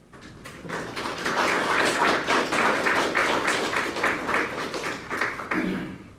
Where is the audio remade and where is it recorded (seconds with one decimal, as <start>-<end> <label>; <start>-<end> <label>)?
0.0-1.2 recorded; 1.2-2.1 remade; 2.1-6.2 recorded